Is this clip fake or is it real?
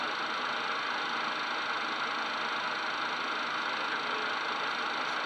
real